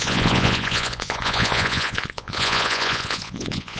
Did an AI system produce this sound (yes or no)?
yes